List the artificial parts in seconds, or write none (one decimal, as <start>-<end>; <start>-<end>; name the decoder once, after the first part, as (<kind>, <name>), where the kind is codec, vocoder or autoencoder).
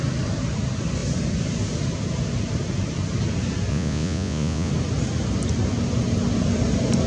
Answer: 3.7-4.7 (vocoder, Vocos)